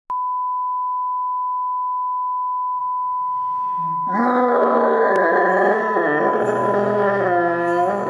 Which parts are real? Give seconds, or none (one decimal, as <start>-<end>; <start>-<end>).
0.0-2.8; 5.8-6.6

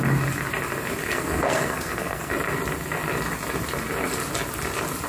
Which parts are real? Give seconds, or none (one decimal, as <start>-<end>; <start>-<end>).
0.0-1.0; 2.3-5.1

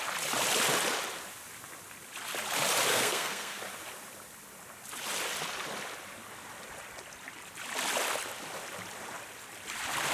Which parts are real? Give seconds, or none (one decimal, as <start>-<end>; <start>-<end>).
0.0-2.9; 3.6-10.1

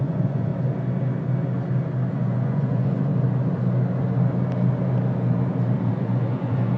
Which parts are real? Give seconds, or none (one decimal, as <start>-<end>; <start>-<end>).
0.5-2.1; 3.1-5.9

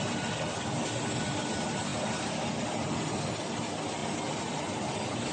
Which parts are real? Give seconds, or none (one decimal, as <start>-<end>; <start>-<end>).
0.0-5.3

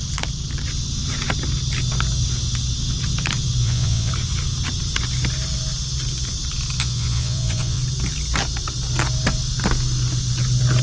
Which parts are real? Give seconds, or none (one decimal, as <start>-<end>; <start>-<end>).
0.0-3.6; 4.1-6.8; 7.8-10.8